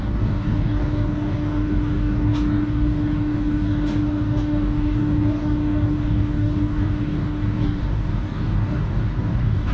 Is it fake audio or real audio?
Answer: fake